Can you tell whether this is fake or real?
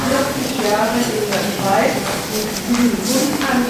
real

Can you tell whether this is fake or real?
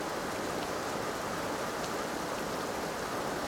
real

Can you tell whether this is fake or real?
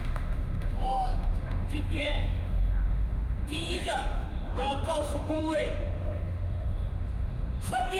fake